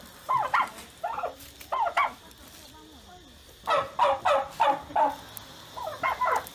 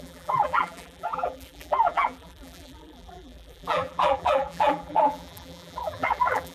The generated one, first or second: second